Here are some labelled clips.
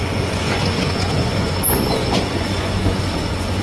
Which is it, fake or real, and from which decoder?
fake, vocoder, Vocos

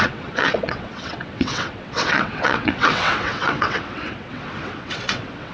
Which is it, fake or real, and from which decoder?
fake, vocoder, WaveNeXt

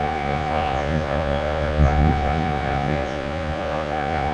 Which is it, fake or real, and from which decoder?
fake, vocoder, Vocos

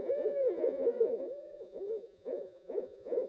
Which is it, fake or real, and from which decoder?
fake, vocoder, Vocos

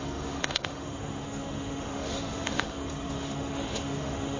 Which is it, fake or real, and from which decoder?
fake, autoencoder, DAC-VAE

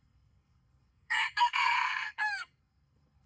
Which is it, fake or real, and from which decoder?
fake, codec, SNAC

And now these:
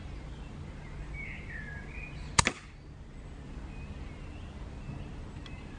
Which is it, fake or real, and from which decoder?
real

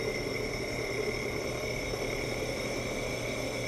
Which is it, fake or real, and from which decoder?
real